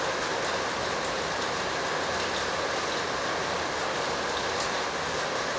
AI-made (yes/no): no